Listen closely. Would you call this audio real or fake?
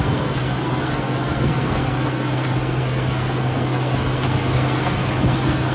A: fake